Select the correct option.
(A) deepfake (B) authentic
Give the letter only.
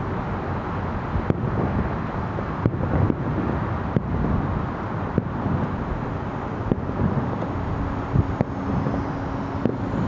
B